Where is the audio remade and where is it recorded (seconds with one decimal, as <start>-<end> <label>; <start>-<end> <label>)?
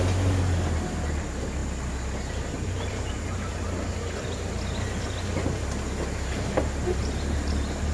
0.0-7.9 recorded